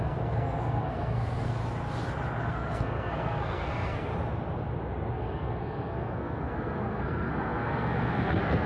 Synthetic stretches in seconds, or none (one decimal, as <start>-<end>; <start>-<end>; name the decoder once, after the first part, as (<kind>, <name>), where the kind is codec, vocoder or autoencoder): 0.0-1.6 (codec, SNAC); 2.4-4.1; 5.1-8.7